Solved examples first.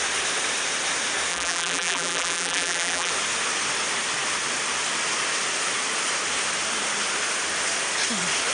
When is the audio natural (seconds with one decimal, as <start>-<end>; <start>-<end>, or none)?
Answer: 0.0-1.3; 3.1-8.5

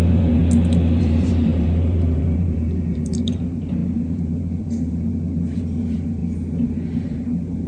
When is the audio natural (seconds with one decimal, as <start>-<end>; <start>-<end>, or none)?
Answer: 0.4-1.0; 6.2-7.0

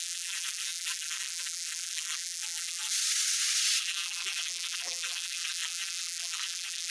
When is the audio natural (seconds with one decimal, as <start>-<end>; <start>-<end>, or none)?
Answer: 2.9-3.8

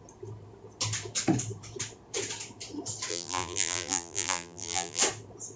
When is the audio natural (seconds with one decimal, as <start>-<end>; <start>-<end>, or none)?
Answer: 0.0-3.1; 5.0-5.6